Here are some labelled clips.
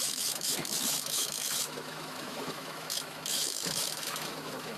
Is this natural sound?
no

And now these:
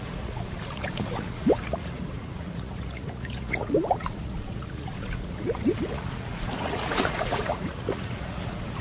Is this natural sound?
no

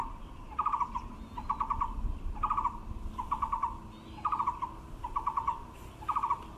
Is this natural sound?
yes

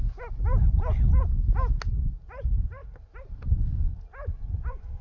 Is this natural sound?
yes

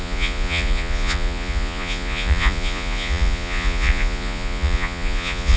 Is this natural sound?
no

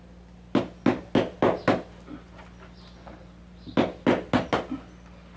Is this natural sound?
yes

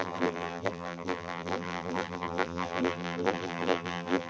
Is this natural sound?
no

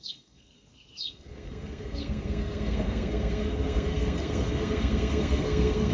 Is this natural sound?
no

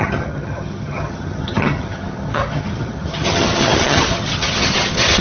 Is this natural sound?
no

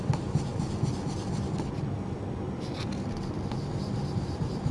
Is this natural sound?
no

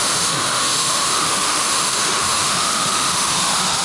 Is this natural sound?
no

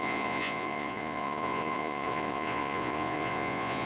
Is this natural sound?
no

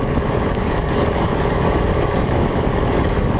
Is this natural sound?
no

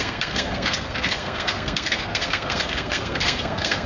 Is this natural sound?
no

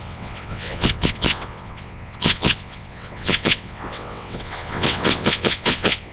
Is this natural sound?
no